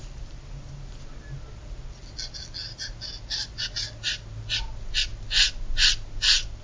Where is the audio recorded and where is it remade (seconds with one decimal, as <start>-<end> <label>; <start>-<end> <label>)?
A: 0.0-6.6 recorded